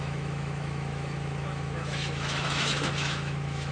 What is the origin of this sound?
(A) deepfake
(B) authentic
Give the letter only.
A